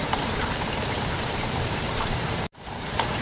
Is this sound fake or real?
fake